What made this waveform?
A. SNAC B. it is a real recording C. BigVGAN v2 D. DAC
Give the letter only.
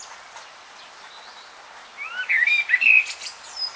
B